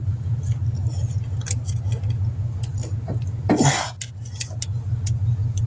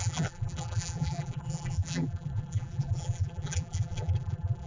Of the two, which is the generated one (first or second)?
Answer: second